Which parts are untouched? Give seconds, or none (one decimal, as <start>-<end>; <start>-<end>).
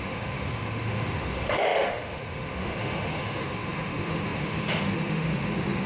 none